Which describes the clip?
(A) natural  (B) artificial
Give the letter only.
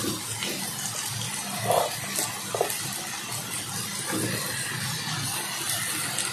A